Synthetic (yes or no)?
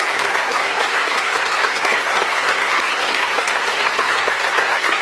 yes